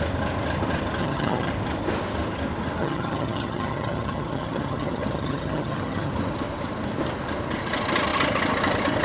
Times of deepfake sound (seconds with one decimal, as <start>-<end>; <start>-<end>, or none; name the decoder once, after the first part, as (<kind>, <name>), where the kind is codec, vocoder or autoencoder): 1.0-1.5 (vocoder, HiFi-GAN); 2.8-6.1